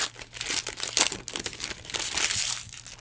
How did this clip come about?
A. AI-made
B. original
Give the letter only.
B